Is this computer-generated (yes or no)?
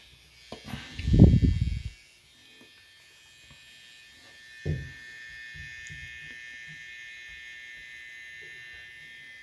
no